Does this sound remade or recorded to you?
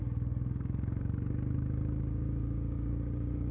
remade